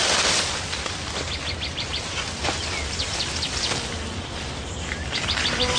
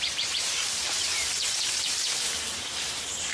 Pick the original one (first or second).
first